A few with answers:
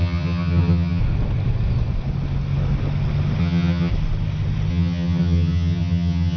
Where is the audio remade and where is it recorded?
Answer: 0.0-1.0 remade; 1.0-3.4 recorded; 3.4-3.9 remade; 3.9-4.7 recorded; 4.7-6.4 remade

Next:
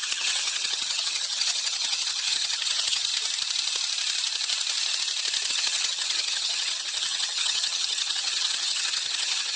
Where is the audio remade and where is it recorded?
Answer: 0.0-3.1 remade; 3.1-5.5 recorded; 5.5-9.6 remade

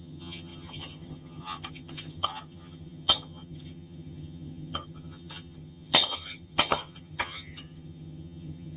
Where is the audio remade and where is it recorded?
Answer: 0.0-8.8 remade

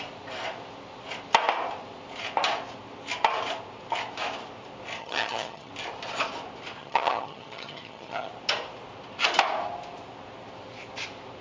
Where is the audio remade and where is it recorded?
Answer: 0.0-5.0 recorded; 5.0-5.7 remade; 5.7-6.8 recorded; 6.8-8.3 remade; 8.3-11.4 recorded

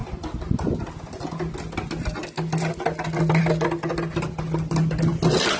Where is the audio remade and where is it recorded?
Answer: 0.0-5.6 recorded

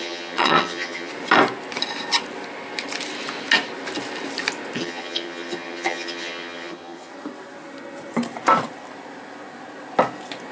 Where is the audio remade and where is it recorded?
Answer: 0.0-1.1 remade; 1.1-4.8 recorded; 4.8-7.1 remade; 7.1-10.5 recorded

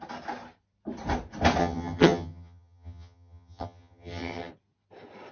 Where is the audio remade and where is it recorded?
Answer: 0.0-1.6 recorded; 1.6-4.5 remade; 4.5-5.3 recorded